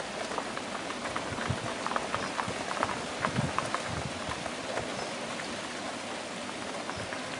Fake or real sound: real